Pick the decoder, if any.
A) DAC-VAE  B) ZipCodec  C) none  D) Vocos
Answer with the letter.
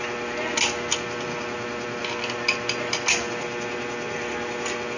C